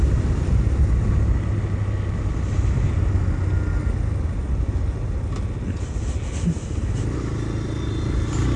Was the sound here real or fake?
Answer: real